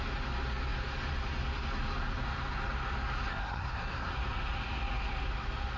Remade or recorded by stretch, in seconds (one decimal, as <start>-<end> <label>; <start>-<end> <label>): 0.0-3.3 recorded; 3.3-4.1 remade; 4.1-5.8 recorded